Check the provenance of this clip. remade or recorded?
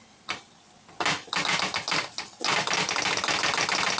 recorded